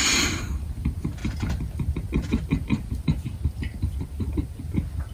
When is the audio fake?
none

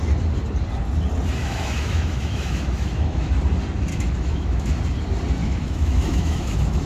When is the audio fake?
1.4-3.3 (autoencoder, DAC-VAE); 3.9-4.8; 5.4-6.9

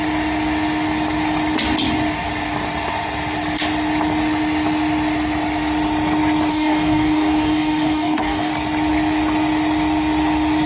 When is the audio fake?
6.5-8.5 (codec, DAC)

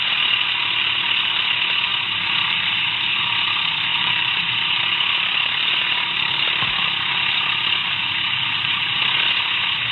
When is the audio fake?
3.9-4.8 (vocoder, BigVGAN v2); 7.8-8.8

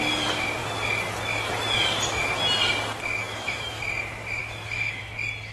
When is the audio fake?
3.2-3.8 (autoencoder, DAC-VAE); 4.4-5.0

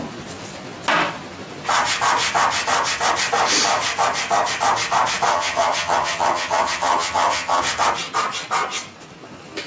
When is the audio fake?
5.3-7.6 (vocoder, HiFi-GAN)

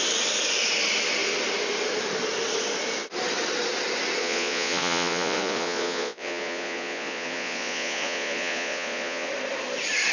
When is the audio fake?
4.2-9.3 (vocoder, Vocos)